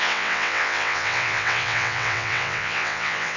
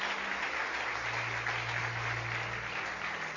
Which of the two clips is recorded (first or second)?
second